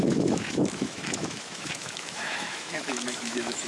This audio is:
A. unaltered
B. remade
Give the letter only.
B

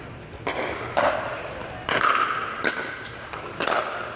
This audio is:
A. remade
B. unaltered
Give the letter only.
B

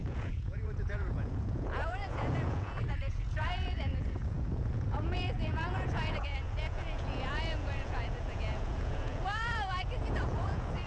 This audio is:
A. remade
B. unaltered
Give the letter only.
A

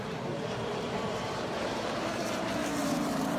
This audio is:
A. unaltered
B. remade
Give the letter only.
B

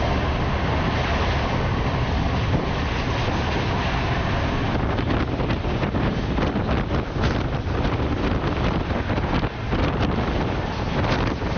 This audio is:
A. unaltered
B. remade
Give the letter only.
A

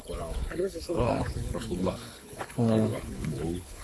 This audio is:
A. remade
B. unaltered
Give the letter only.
A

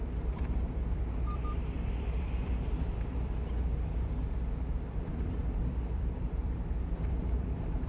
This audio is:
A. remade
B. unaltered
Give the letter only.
A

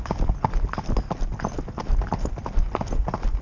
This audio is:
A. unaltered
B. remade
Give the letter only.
A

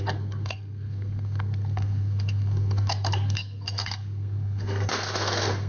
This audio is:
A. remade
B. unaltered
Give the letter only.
A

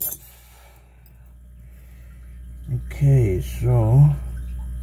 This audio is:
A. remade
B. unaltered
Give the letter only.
B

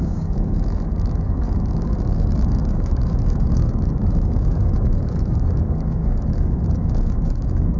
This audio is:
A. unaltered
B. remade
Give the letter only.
B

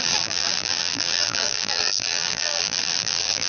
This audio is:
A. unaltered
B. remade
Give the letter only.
B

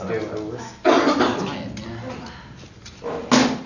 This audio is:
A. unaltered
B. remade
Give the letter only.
A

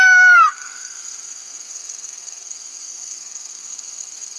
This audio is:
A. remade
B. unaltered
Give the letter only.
A